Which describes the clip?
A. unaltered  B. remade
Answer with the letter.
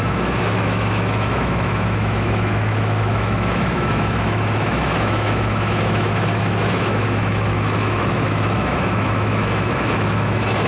B